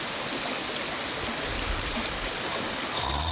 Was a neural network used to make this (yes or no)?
no